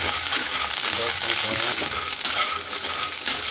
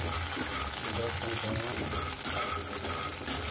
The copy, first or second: first